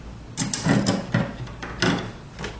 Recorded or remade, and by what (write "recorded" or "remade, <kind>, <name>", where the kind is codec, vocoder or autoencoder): recorded